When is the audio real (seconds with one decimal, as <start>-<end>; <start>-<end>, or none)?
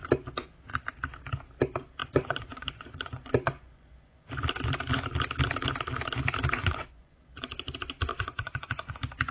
0.0-2.0; 4.3-6.6; 7.7-8.1; 8.9-9.3